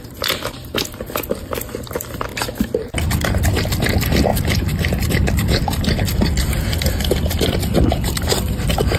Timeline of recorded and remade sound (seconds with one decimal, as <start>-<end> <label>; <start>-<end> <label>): 0.0-2.3 remade; 2.3-3.7 recorded; 3.7-9.0 remade